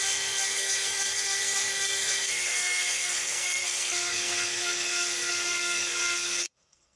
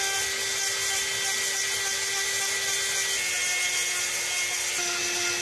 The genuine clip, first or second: second